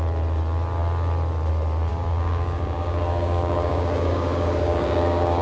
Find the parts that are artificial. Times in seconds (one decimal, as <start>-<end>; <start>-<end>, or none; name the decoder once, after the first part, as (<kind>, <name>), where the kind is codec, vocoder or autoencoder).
1.9-5.4 (codec, DAC)